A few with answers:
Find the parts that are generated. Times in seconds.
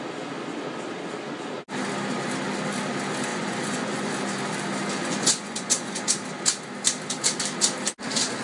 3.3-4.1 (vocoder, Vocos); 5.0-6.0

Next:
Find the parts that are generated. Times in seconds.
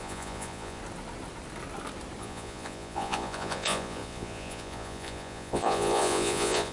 0.0-0.8 (vocoder, Vocos); 2.2-6.7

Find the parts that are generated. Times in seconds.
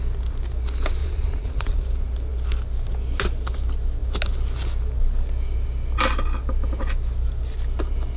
1.0-1.8 (vocoder, Vocos)